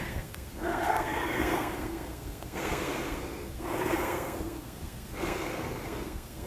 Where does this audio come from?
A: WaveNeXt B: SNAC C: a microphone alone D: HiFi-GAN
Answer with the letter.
B